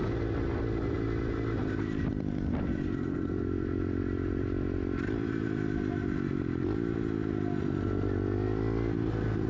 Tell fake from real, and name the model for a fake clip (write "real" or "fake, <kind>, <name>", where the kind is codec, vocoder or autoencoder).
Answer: real